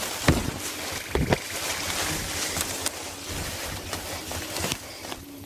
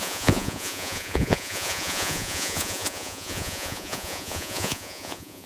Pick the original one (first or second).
first